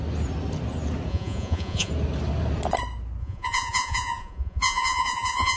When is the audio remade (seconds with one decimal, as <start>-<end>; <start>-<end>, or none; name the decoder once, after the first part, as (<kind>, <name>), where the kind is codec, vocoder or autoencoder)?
1.1-1.9 (vocoder, Vocos); 3.2-5.6